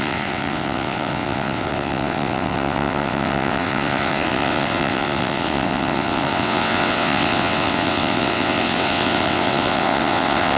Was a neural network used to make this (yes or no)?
yes